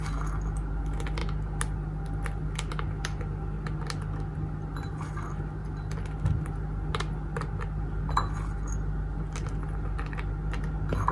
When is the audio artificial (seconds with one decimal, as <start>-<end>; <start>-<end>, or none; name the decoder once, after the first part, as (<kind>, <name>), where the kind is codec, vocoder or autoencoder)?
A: none